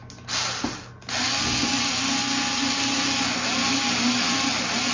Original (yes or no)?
yes